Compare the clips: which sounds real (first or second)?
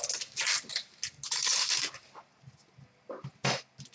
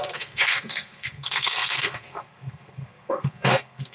first